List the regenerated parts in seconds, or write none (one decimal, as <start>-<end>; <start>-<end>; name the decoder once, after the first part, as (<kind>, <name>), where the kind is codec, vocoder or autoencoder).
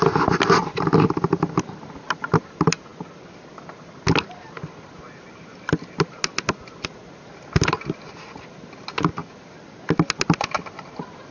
none